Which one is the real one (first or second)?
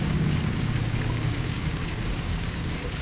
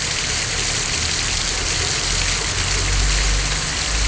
second